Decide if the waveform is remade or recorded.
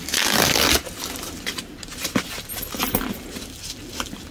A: recorded